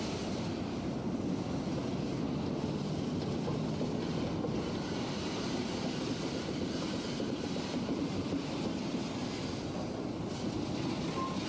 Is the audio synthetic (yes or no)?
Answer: no